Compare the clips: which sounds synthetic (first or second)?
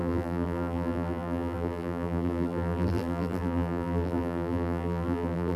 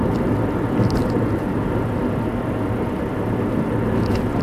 first